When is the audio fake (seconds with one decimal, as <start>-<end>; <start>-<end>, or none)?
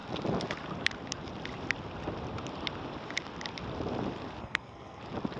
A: 4.4-5.0